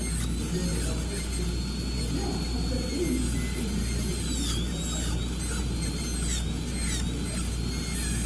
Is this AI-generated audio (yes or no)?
no